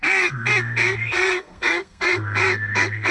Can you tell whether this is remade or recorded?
remade